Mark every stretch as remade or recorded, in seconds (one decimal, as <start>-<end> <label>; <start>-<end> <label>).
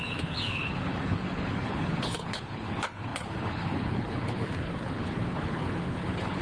0.0-6.4 remade